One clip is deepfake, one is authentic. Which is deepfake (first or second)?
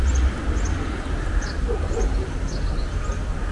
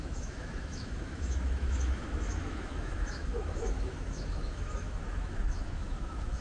second